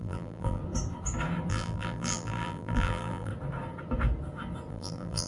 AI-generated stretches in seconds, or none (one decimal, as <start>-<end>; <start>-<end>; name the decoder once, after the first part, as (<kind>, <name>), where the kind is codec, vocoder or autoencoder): 0.0-0.6 (vocoder, BigVGAN v2); 1.5-3.3; 4.7-5.3